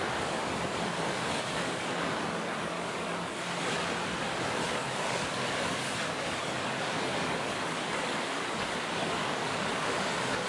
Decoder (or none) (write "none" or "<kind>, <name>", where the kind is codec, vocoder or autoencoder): codec, DAC